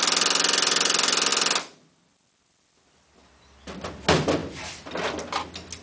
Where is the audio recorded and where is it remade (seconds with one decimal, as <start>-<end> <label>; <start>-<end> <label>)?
0.0-5.8 recorded